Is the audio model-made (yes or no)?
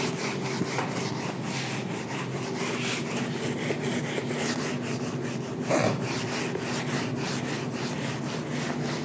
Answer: no